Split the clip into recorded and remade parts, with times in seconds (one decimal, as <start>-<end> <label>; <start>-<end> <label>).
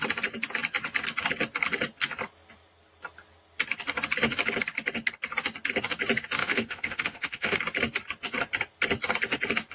0.0-6.4 recorded; 6.4-7.6 remade; 7.6-9.7 recorded